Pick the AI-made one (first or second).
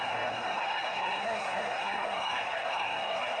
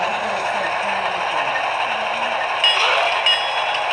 first